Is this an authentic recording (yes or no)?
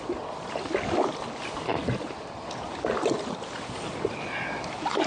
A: yes